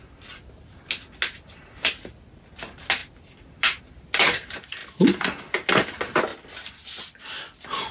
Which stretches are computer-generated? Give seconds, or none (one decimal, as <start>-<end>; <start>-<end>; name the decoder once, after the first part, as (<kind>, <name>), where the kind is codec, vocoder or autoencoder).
none